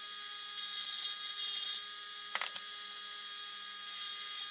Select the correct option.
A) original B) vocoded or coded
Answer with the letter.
A